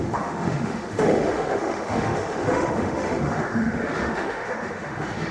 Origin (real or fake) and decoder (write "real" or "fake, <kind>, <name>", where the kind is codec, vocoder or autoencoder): fake, autoencoder, DAC-VAE